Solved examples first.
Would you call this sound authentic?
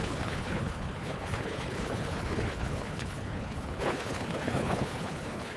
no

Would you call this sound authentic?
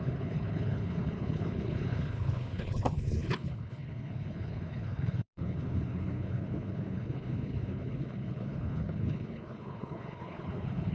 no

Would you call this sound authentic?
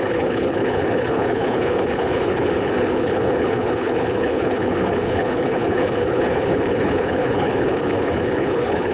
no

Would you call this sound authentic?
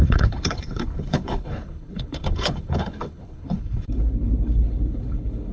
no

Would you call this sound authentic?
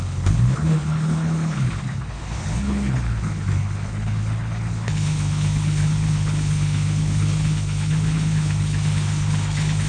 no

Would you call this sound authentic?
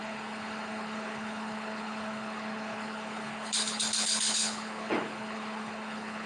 no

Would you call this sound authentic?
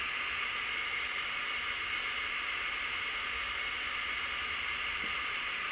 yes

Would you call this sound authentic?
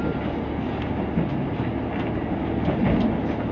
yes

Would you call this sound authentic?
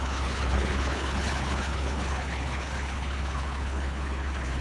no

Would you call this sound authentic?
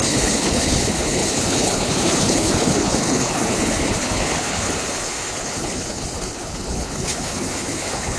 no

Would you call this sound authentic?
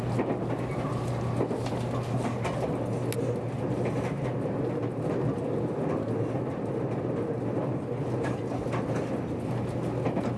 yes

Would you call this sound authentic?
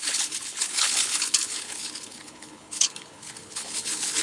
no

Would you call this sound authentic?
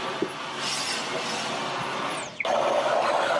yes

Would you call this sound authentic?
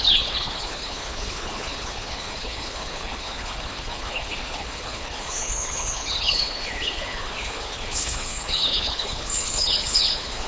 no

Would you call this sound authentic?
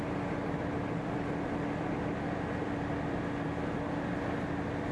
yes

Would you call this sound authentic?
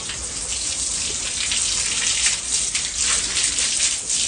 yes